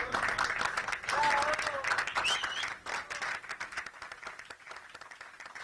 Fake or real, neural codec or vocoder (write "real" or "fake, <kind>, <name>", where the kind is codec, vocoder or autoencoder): real